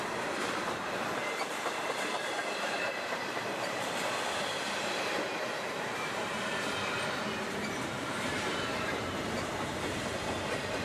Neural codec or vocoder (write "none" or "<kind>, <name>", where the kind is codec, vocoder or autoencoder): vocoder, BigVGAN v2